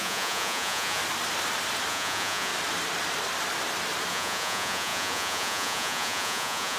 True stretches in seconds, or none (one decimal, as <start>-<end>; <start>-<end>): 1.0-1.9; 2.5-4.1